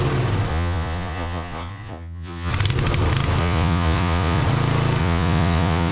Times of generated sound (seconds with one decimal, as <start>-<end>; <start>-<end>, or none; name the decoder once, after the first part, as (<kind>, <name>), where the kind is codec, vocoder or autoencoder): 0.5-2.5 (vocoder, Vocos); 3.4-4.4; 5.0-5.9